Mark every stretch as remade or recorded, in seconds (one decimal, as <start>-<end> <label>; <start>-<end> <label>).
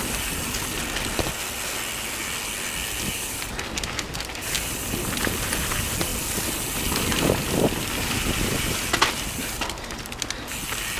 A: 0.0-11.0 recorded